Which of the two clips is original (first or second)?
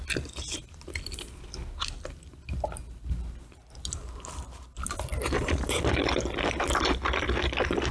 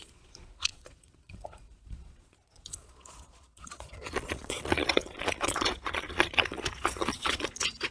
first